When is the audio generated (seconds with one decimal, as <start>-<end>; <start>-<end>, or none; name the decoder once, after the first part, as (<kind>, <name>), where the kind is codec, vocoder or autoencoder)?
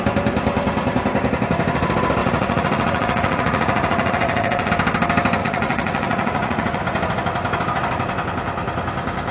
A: 2.2-4.7 (vocoder, Vocos); 5.4-6.8